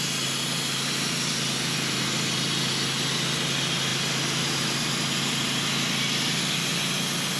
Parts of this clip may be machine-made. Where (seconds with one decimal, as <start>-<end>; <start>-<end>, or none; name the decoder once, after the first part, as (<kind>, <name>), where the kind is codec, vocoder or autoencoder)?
none